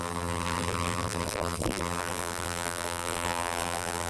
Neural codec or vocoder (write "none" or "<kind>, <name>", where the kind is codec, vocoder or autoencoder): vocoder, BigVGAN v2